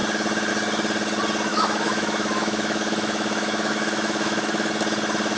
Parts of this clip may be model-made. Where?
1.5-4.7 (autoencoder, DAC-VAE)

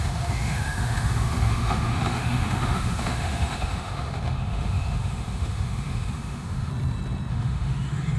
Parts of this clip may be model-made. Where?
0.0-6.7 (autoencoder, DAC-VAE); 7.3-8.2

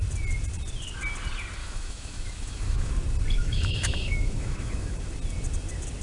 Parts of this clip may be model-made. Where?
1.6-2.9 (autoencoder, DAC-VAE); 3.4-5.0